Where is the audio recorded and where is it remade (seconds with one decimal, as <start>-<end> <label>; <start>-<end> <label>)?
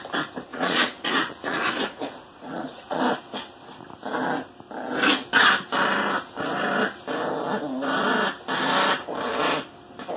0.0-0.5 recorded; 0.5-3.0 remade; 3.0-10.2 recorded